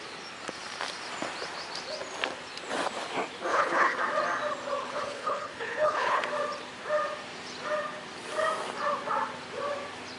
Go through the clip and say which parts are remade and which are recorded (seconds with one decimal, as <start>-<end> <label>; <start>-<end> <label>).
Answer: 0.0-3.5 recorded; 3.5-4.0 remade; 4.0-4.8 recorded; 4.8-6.2 remade; 6.2-10.2 recorded